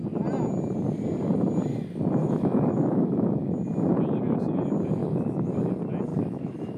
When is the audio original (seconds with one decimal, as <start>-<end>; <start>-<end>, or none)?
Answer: 0.0-2.2; 3.5-5.0; 5.5-6.1